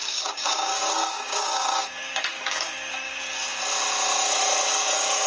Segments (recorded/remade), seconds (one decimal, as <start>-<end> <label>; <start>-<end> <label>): 0.0-3.2 remade; 3.2-5.3 recorded